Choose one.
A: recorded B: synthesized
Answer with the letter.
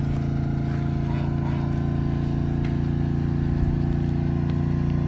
A